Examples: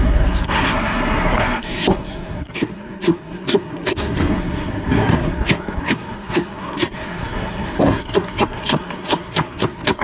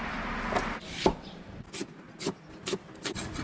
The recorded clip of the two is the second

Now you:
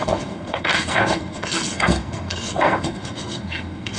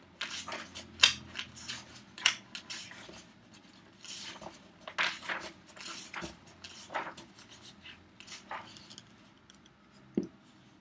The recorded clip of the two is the second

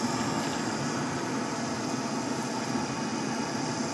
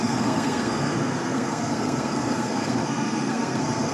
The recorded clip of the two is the first